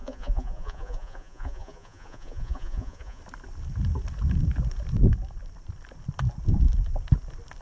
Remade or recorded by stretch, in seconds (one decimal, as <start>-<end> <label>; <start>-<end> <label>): 0.0-3.2 remade; 3.2-7.6 recorded